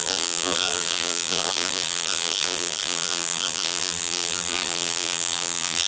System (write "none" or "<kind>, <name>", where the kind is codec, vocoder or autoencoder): vocoder, BigVGAN v2